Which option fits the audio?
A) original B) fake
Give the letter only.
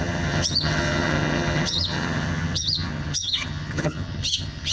B